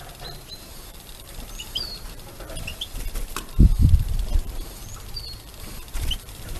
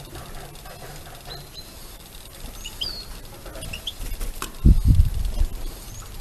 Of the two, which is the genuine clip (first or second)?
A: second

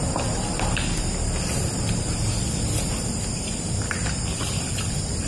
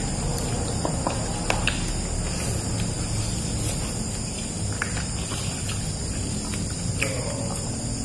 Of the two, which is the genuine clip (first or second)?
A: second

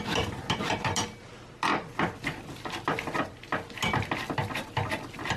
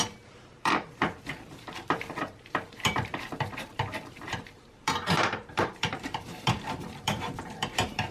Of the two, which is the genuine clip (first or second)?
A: first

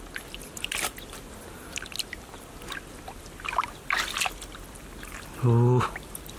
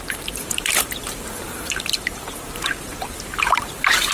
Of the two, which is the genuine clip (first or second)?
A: first